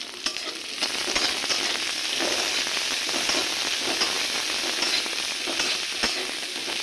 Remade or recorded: recorded